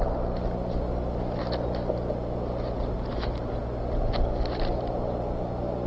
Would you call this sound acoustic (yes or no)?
yes